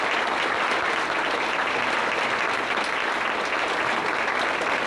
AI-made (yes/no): no